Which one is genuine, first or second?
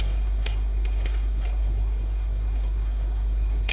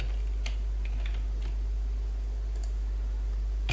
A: second